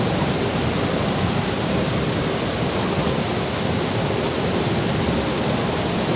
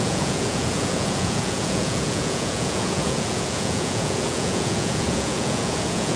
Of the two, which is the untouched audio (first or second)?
first